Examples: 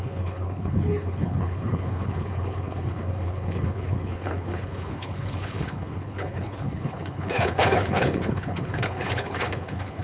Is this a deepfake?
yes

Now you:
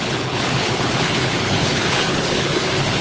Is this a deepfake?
yes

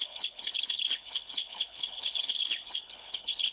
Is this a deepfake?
yes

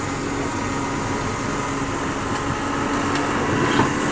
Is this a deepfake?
no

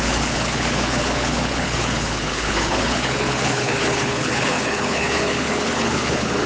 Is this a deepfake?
yes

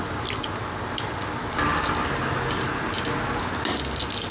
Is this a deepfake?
no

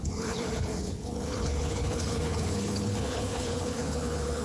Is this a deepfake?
yes